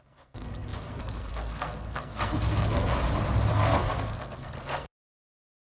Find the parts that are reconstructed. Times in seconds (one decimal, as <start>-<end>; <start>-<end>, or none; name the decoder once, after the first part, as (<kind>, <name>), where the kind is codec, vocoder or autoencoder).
0.0-2.9 (codec, SNAC); 3.5-5.6